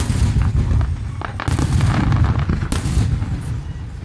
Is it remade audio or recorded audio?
recorded